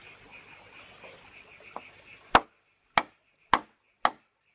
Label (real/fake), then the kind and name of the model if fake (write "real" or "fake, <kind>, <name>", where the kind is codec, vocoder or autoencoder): real